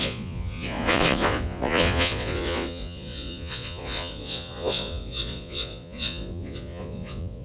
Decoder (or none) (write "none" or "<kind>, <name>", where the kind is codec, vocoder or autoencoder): vocoder, Vocos